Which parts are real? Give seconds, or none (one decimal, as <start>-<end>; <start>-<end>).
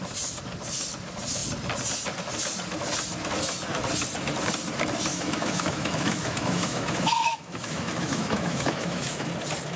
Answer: 0.0-5.1; 9.3-9.8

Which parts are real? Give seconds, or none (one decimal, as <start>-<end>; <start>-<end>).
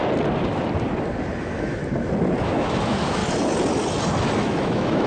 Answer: 0.0-1.4; 1.8-2.4; 3.2-4.4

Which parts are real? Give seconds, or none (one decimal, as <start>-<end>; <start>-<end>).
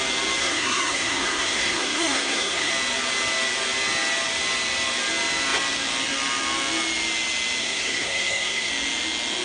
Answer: 0.0-0.4; 2.7-7.6; 8.7-9.4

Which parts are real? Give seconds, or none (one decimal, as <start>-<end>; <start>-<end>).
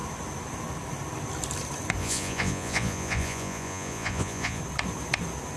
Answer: 0.0-2.0; 4.6-5.6